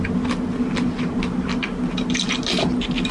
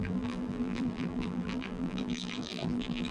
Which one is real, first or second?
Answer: first